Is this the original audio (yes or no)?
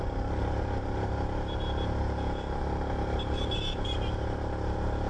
yes